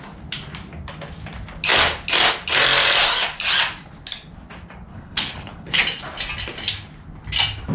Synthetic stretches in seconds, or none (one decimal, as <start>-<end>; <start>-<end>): 4.9-5.8